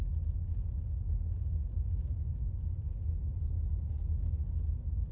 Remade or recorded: recorded